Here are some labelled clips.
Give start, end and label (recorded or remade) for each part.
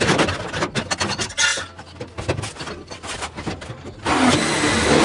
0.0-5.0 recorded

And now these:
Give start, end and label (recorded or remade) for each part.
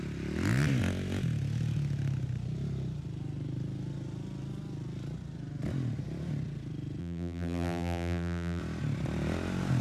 0.0-7.0 recorded; 7.0-8.6 remade; 8.6-9.8 recorded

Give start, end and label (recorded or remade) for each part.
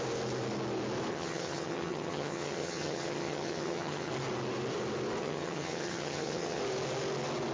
0.0-1.1 recorded; 1.1-4.1 remade; 4.1-5.2 recorded; 5.2-6.6 remade; 6.6-7.5 recorded